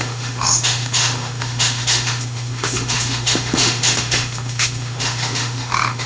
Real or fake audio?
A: fake